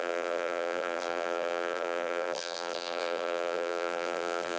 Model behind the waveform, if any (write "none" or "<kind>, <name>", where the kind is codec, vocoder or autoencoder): vocoder, BigVGAN v2